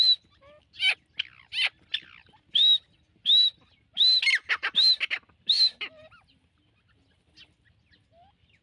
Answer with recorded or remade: recorded